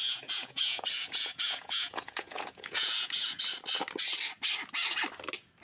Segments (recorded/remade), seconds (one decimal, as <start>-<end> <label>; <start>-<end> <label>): 0.0-3.4 remade; 3.4-5.6 recorded